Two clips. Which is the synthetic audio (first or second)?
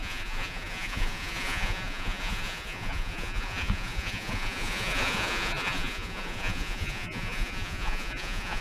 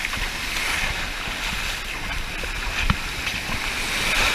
first